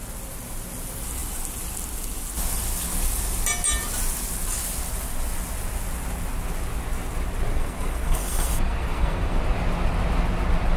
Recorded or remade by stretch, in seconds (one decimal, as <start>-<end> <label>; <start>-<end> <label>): 0.0-7.5 recorded; 7.5-9.4 remade; 9.4-10.8 recorded